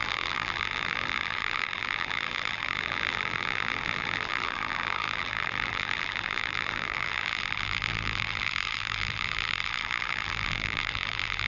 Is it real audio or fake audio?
fake